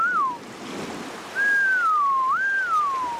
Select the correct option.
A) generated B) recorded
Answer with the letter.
B